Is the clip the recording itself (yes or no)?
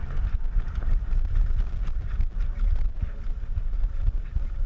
no